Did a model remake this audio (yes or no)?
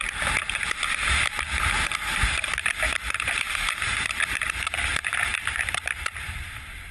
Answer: yes